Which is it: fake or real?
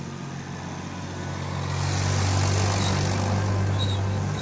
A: real